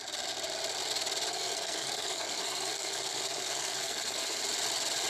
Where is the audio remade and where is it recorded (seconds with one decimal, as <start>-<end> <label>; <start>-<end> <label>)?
0.0-1.3 recorded; 1.3-4.4 remade; 4.4-5.1 recorded